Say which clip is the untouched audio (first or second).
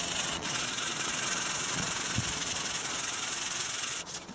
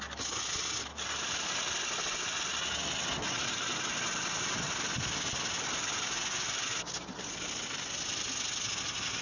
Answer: second